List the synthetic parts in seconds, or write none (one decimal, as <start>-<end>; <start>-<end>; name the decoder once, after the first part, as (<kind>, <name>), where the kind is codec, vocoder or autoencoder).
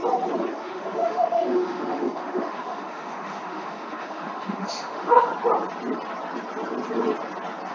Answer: 0.5-5.3 (autoencoder, DAC-VAE)